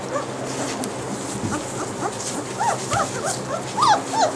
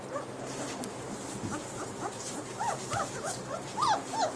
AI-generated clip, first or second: second